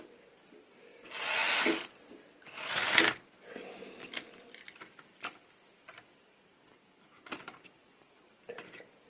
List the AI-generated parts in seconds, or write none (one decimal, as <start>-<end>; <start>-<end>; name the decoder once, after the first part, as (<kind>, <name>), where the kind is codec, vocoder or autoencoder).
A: none